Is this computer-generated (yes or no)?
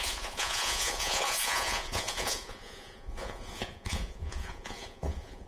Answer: yes